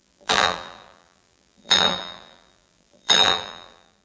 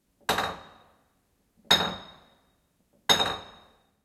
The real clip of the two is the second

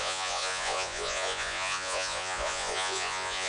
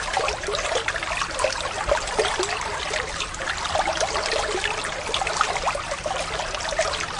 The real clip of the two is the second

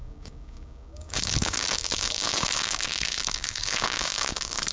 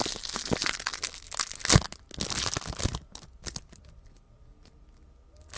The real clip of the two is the second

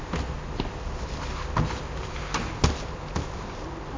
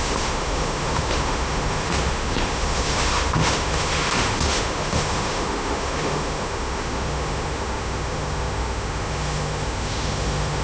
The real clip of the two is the first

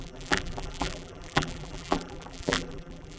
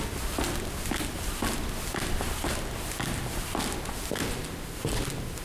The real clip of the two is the second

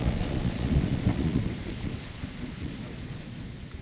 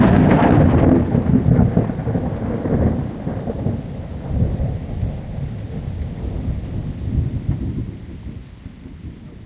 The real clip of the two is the second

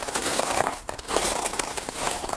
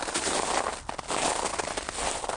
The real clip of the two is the second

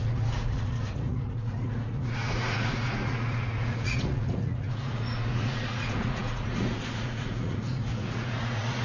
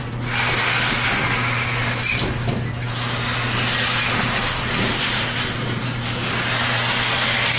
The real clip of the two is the second